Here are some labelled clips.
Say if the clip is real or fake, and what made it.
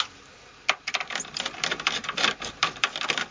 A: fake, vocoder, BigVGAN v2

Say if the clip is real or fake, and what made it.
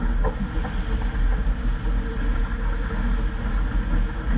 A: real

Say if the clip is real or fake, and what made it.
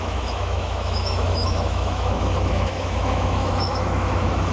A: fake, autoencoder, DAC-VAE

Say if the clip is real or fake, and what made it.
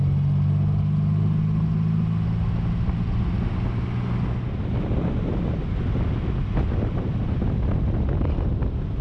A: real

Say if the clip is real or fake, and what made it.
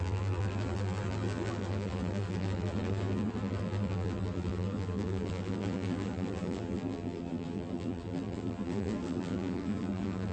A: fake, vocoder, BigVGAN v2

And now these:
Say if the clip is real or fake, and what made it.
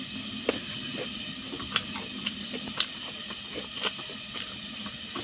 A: real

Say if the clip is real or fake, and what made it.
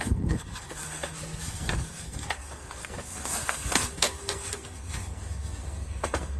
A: fake, codec, SNAC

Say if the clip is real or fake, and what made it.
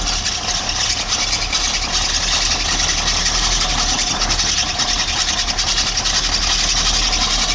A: real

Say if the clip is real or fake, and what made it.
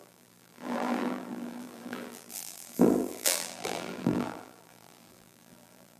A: fake, vocoder, BigVGAN v2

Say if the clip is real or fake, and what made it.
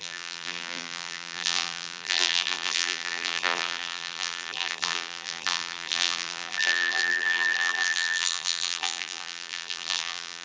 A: fake, vocoder, BigVGAN v2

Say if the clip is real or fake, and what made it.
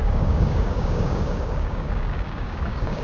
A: fake, codec, DAC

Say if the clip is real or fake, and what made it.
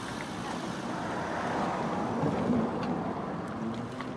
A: real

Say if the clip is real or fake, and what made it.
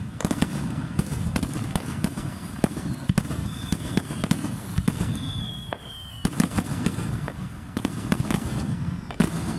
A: fake, codec, SNAC